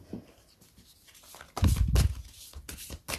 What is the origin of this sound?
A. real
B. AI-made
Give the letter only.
A